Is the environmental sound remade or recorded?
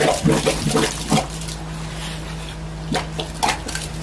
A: recorded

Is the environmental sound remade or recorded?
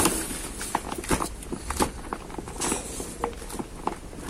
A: recorded